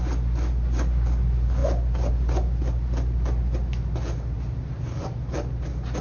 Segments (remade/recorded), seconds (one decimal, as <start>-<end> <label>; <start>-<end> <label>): 0.0-6.0 recorded